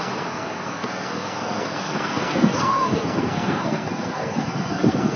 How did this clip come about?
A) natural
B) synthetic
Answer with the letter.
B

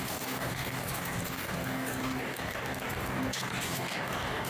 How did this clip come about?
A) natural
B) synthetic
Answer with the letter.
B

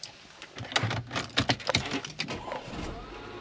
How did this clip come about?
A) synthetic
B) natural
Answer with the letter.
B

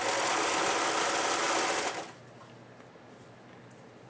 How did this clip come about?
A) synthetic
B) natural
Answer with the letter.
B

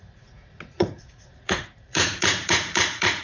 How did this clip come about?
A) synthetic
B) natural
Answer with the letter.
A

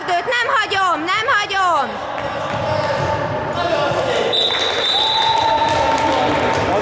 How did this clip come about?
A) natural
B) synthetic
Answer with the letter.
A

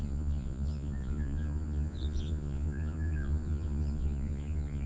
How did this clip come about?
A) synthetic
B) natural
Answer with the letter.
A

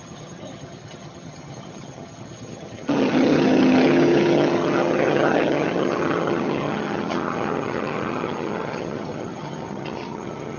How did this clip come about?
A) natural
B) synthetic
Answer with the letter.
B